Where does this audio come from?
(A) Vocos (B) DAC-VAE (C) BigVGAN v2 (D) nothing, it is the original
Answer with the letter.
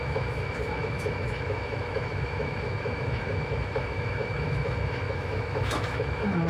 B